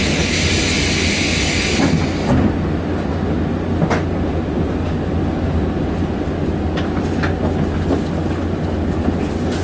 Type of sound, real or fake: real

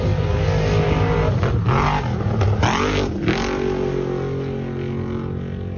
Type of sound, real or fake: real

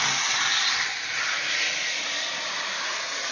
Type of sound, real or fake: real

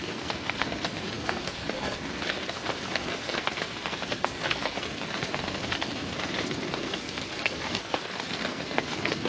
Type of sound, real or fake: fake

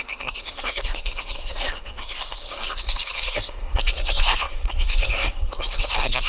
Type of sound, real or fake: fake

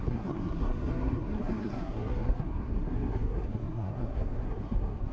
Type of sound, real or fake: fake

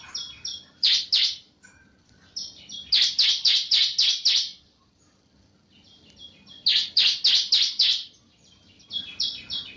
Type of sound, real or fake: real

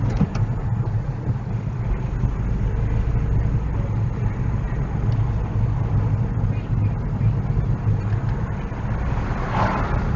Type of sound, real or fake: real